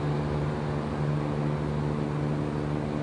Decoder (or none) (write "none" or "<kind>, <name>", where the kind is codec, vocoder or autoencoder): none